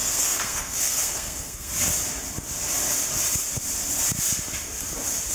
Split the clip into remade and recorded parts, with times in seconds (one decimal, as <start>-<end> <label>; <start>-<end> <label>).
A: 0.0-1.7 remade; 1.7-5.3 recorded

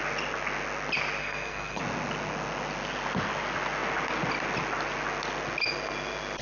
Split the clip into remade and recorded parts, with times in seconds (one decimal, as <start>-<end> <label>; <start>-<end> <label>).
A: 0.0-1.2 recorded; 1.2-1.8 remade; 1.8-6.4 recorded

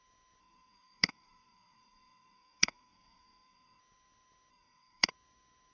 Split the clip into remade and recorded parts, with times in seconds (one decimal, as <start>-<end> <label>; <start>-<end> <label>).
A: 0.0-0.4 recorded; 0.4-3.8 remade; 3.8-4.5 recorded; 4.5-5.1 remade; 5.1-5.7 recorded

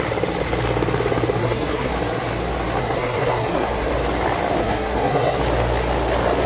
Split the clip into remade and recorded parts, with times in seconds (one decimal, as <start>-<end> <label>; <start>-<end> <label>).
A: 0.0-1.4 recorded; 1.4-1.9 remade; 1.9-2.8 recorded; 2.8-3.9 remade; 3.9-4.6 recorded; 4.6-5.4 remade; 5.4-6.5 recorded

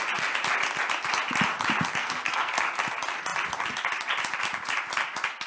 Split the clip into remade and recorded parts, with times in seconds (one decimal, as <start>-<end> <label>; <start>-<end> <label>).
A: 0.0-2.0 recorded; 2.0-2.6 remade; 2.6-5.5 recorded

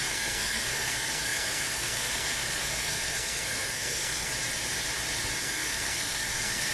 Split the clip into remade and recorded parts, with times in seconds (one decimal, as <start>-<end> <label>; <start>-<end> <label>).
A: 0.0-4.3 remade; 4.3-5.4 recorded; 5.4-6.7 remade